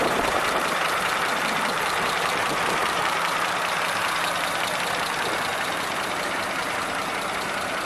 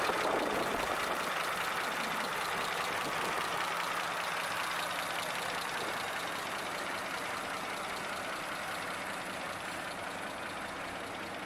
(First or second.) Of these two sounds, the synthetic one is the first